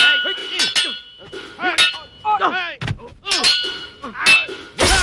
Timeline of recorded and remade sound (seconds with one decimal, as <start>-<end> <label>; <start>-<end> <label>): 0.0-3.1 recorded; 3.1-4.2 remade; 4.2-5.0 recorded